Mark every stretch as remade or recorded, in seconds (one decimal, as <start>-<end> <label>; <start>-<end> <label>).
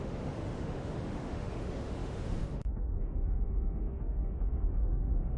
0.0-5.4 remade